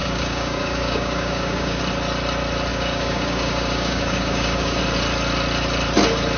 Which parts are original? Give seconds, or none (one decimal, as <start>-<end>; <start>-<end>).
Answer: 1.8-2.7; 4.8-6.4